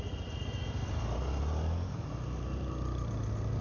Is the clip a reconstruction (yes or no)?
no